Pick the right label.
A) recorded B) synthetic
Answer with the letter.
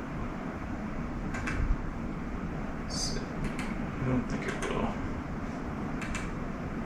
B